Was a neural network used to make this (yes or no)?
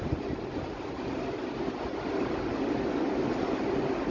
no